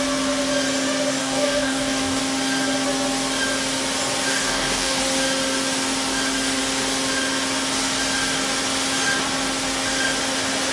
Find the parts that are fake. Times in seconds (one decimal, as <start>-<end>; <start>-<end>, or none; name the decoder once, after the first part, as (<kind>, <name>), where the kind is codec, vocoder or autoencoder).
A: 1.2-2.2 (codec, DAC); 4.3-5.0